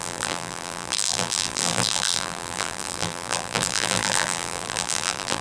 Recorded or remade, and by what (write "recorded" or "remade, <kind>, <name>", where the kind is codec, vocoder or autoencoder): remade, vocoder, BigVGAN v2